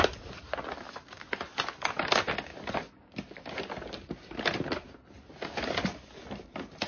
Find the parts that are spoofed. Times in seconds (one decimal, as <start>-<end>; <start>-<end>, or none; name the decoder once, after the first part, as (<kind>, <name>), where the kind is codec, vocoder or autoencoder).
none